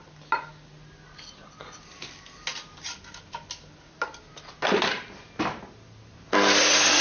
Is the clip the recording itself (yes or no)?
yes